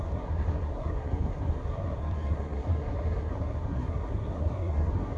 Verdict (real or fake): fake